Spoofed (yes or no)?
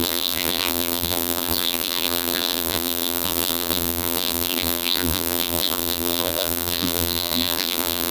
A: yes